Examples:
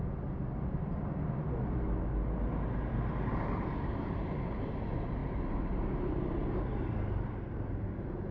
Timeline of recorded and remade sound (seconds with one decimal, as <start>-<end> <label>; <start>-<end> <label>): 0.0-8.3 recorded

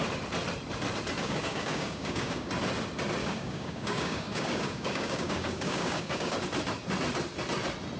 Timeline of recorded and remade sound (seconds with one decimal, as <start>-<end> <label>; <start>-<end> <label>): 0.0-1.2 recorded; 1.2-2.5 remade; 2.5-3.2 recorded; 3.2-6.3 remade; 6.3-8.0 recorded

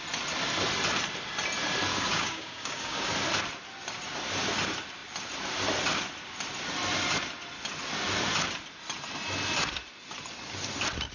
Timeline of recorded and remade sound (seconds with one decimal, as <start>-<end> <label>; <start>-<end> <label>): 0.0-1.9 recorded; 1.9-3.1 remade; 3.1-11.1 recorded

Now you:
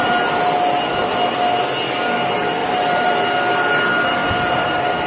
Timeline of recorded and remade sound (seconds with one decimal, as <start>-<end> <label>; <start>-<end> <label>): 0.0-2.6 recorded; 2.6-3.2 remade; 3.2-4.2 recorded; 4.2-5.1 remade

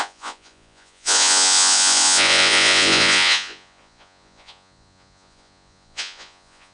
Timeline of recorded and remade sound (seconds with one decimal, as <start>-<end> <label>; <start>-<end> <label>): 0.0-6.7 remade